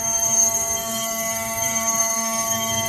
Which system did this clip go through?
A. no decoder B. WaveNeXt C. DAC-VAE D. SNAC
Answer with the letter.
D